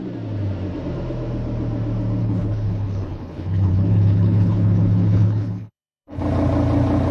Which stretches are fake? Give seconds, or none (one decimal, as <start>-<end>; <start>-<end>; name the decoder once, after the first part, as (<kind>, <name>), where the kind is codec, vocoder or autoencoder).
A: 2.2-6.2 (codec, HILCodec)